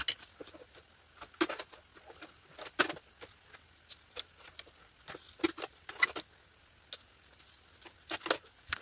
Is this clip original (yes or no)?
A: yes